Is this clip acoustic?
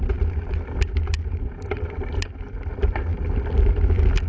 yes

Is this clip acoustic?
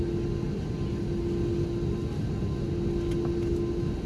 yes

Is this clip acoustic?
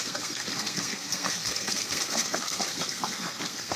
no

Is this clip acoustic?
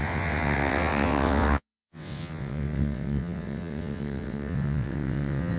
no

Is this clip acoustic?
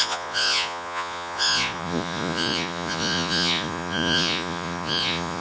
no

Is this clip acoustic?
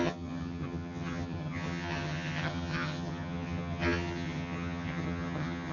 no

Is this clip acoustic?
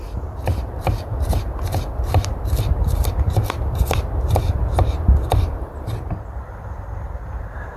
no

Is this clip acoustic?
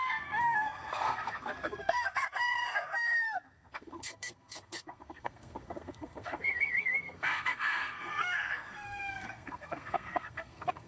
no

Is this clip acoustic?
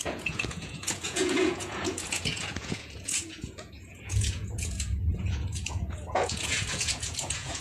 no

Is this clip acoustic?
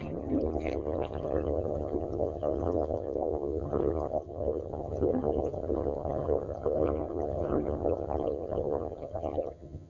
no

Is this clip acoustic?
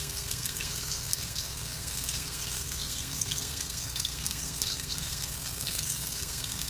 no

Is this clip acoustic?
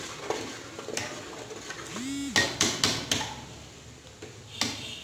yes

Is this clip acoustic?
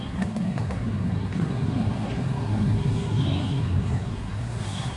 no